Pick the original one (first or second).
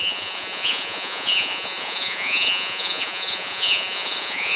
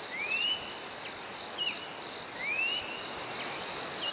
second